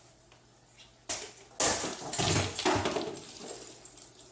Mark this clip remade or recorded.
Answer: recorded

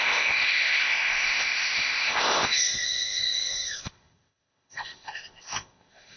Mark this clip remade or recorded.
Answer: remade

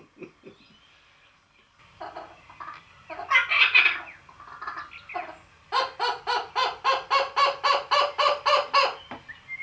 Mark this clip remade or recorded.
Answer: recorded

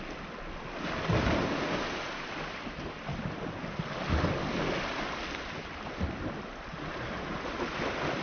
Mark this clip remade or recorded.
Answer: recorded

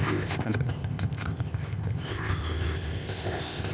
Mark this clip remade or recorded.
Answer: remade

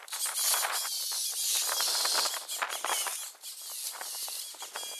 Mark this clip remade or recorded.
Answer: recorded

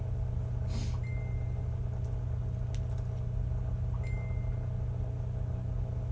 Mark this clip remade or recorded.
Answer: recorded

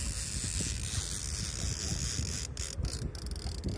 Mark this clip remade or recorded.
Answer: recorded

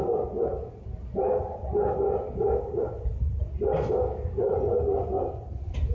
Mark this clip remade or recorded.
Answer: recorded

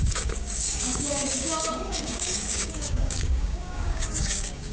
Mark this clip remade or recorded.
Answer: remade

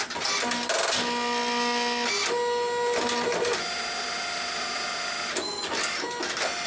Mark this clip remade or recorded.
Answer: recorded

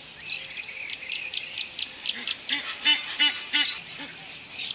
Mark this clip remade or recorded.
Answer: recorded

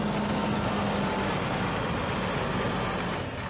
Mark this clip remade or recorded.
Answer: recorded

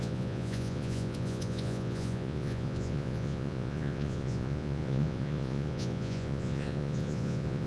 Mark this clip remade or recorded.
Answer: remade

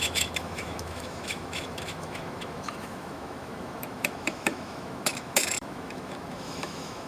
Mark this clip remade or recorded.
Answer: remade